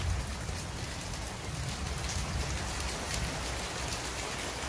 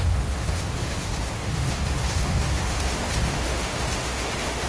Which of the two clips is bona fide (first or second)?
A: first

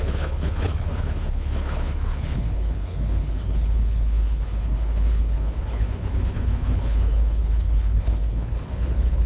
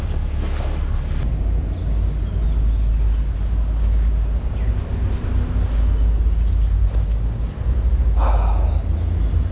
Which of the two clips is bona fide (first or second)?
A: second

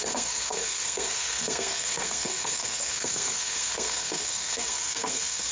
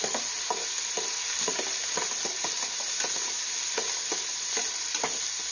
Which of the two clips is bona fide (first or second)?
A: second